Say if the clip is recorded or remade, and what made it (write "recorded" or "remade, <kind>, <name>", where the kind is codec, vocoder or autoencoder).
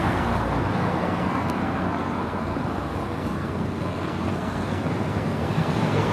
remade, codec, SNAC